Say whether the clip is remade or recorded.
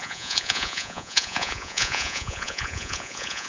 remade